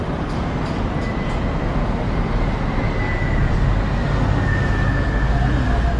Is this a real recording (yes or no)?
yes